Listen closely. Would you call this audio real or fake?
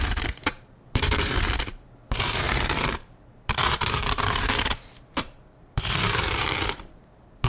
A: fake